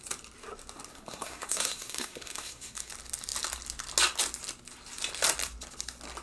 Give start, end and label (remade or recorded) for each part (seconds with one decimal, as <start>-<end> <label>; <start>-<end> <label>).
0.0-0.9 recorded; 0.9-2.9 remade; 2.9-6.2 recorded